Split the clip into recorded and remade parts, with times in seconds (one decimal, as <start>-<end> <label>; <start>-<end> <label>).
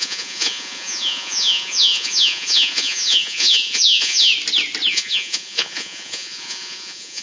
0.0-4.3 remade; 4.3-4.9 recorded; 4.9-7.2 remade